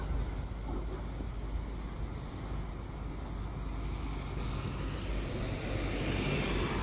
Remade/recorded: recorded